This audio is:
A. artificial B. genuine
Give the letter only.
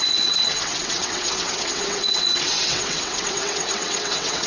A